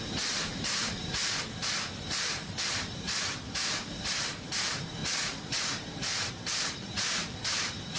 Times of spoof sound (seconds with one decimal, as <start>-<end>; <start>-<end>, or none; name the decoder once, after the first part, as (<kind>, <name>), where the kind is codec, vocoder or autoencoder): 0.0-1.2 (vocoder, BigVGAN v2); 1.8-8.0